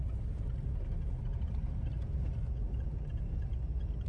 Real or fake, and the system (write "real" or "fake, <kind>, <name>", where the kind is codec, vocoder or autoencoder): real